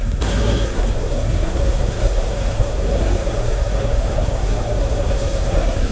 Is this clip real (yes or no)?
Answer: no